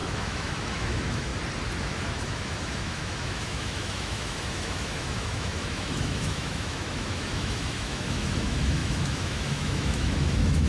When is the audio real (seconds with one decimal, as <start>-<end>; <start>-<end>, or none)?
1.3-1.8